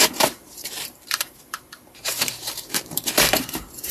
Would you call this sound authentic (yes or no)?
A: no